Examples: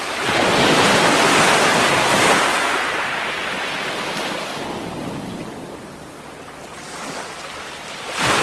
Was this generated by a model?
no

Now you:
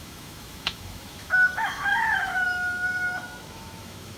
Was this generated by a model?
yes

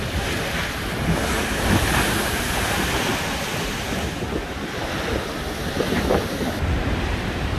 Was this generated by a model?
no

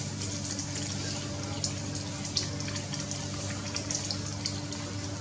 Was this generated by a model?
no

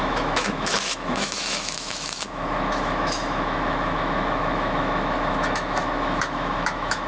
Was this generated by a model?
yes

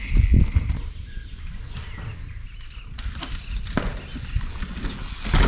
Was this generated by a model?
no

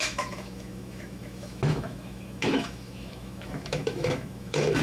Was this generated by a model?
yes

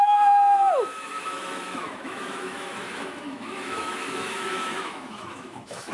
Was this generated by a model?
yes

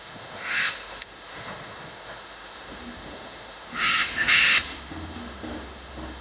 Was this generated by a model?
yes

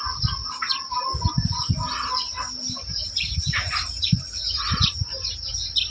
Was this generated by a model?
no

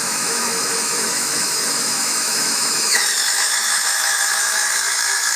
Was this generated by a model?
yes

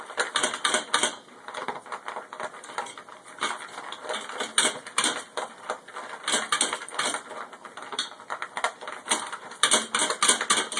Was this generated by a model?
no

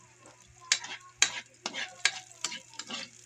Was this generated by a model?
no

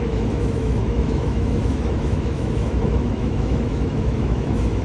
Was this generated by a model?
yes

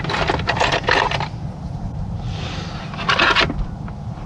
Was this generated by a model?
no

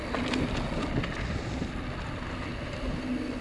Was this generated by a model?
no